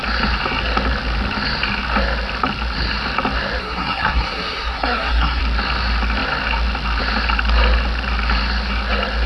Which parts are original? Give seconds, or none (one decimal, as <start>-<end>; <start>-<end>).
0.0-3.6; 5.4-9.3